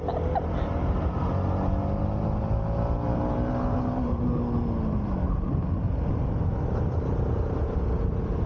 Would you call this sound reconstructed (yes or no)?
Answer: no